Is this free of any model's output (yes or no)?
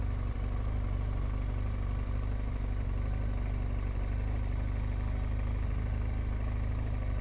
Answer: yes